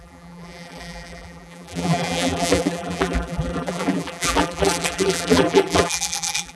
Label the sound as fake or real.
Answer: fake